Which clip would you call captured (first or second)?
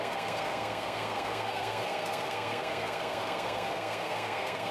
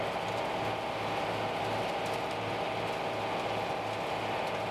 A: second